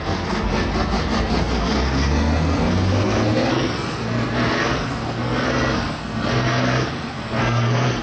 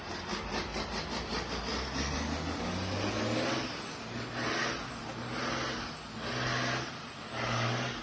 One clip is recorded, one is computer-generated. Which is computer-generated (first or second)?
first